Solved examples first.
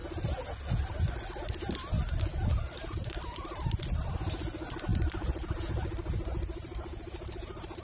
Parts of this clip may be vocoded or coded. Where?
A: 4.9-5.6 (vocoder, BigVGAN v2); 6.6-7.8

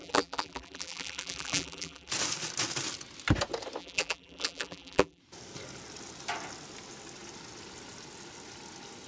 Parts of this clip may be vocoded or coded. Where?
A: 0.0-2.1 (vocoder, BigVGAN v2); 3.8-5.2

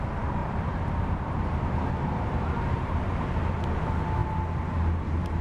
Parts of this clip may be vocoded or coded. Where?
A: 0.4-3.6 (vocoder, BigVGAN v2)